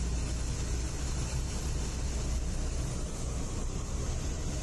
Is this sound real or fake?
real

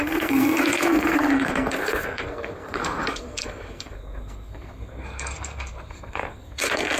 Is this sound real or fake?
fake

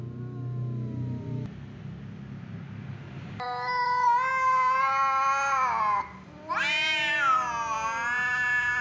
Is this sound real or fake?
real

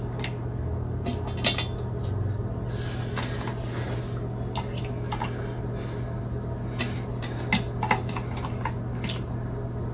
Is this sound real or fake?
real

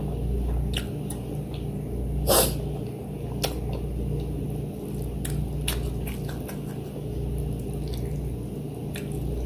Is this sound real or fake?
real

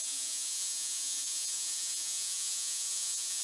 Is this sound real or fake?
fake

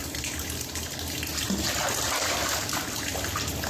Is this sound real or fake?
real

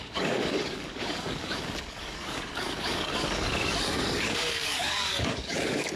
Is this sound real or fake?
fake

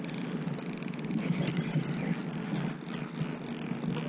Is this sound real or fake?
real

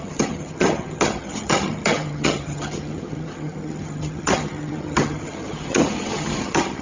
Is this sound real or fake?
fake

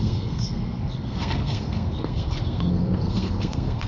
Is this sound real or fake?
fake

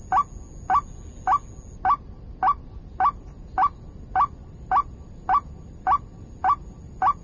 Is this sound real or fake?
real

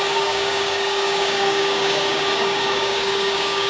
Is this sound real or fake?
fake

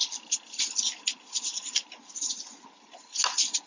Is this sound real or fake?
real